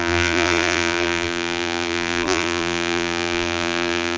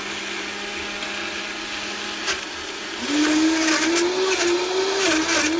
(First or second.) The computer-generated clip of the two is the first